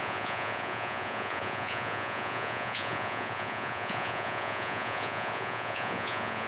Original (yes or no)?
no